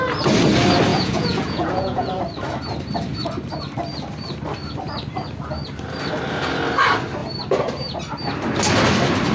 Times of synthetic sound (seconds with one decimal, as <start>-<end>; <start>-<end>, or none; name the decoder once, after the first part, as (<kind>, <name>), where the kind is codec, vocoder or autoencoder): 0.9-2.1 (vocoder, Vocos)

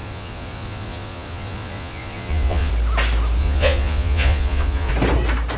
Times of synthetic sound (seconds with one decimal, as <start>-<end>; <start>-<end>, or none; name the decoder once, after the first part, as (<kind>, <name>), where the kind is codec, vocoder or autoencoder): 0.0-2.7 (vocoder, Vocos); 3.4-4.9

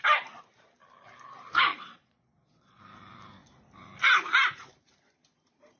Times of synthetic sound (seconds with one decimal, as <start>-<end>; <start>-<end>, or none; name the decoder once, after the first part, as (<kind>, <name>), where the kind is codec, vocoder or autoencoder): 1.7-2.8 (vocoder, Vocos)

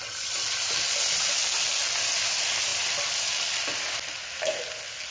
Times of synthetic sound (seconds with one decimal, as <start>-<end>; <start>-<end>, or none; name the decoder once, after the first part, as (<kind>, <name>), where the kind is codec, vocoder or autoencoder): none